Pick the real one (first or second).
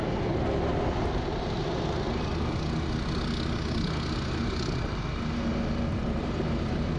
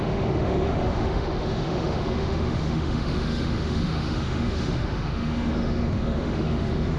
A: first